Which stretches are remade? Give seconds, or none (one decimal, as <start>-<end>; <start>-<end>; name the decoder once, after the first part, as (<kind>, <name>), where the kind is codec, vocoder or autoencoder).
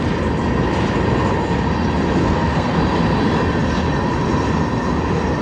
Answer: 2.2-2.8 (codec, SNAC)